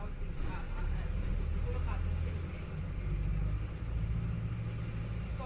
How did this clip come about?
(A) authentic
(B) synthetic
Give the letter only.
A